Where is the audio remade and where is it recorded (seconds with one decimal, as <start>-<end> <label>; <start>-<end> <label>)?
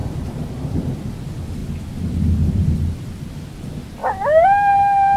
0.0-1.1 remade; 1.1-5.2 recorded